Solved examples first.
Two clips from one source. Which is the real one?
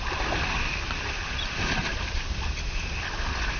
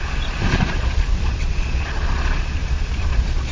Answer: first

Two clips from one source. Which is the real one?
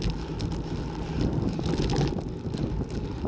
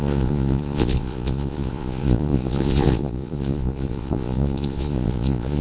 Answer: first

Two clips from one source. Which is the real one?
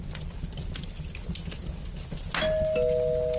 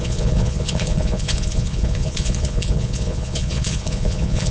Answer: first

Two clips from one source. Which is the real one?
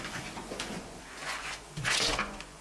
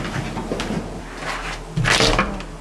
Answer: second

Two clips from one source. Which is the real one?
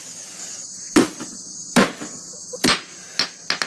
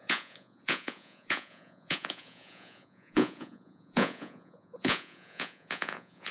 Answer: first